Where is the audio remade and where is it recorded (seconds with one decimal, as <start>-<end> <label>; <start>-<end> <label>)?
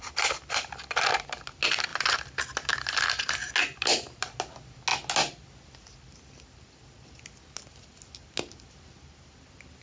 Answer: 0.0-9.8 recorded